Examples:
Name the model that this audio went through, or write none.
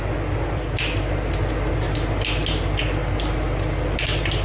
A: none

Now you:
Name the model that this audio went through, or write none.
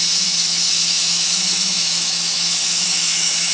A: autoencoder, DAC-VAE